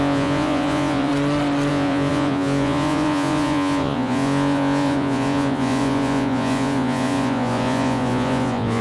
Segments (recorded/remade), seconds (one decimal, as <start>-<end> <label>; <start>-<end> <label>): 0.0-1.1 remade; 1.1-1.7 recorded; 1.7-8.8 remade